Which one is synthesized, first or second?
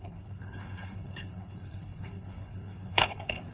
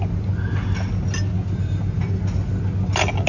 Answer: first